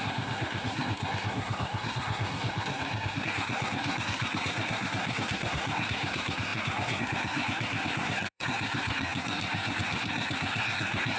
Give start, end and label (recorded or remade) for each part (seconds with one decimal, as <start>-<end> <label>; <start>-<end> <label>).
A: 0.0-11.2 remade